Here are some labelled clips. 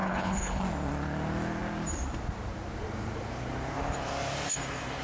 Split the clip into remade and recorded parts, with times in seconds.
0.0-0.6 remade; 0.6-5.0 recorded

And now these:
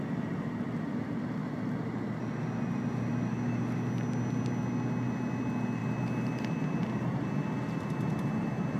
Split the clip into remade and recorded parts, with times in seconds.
0.0-8.8 recorded

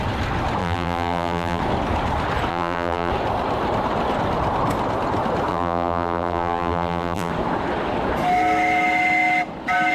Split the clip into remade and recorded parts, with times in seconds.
0.0-0.6 recorded; 0.6-1.6 remade; 1.6-2.5 recorded; 2.5-3.1 remade; 3.1-5.5 recorded; 5.5-7.3 remade; 7.3-9.9 recorded